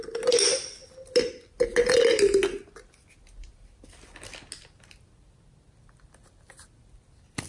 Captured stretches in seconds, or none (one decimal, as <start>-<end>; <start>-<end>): 0.0-7.5